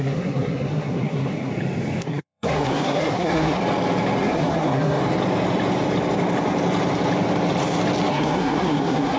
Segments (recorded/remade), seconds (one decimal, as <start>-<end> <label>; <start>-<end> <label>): 0.0-1.5 remade; 1.5-2.0 recorded; 2.0-3.6 remade; 3.6-4.2 recorded; 4.2-5.0 remade; 5.0-8.1 recorded; 8.1-9.2 remade